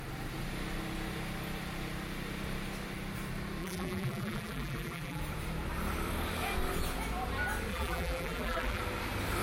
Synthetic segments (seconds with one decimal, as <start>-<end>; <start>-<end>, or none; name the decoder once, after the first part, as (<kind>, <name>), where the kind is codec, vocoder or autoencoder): 3.6-5.2 (vocoder, BigVGAN v2); 7.7-8.8